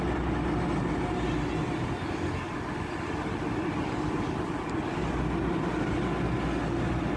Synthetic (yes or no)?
no